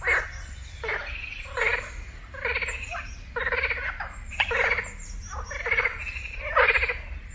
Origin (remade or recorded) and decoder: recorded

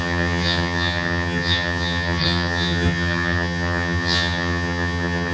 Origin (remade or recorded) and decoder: remade, vocoder, HiFi-GAN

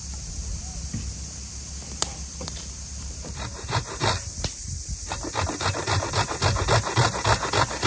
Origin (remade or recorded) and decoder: recorded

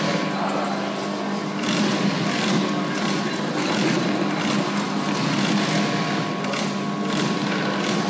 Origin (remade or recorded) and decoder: recorded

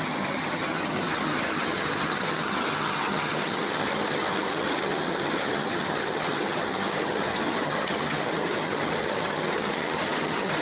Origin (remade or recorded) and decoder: remade, vocoder, HiFi-GAN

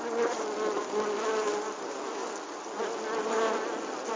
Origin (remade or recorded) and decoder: recorded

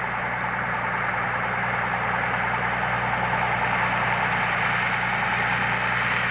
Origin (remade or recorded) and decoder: recorded